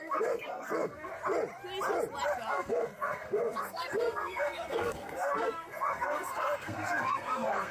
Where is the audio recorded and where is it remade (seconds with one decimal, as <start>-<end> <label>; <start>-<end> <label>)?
0.0-1.1 remade; 1.1-2.5 recorded; 2.5-7.7 remade